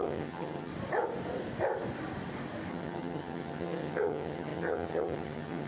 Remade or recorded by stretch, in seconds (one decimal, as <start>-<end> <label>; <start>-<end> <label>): 0.0-0.7 remade; 0.7-2.7 recorded; 2.7-5.7 remade